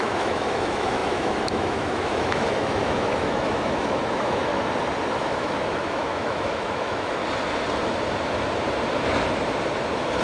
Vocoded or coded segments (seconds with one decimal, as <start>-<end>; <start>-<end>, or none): 0.0-4.5; 5.1-7.2